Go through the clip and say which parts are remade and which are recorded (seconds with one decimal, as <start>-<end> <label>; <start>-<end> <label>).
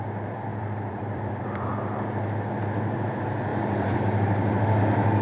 0.0-0.5 recorded; 0.5-1.7 remade; 1.7-3.5 recorded; 3.5-4.0 remade; 4.0-5.2 recorded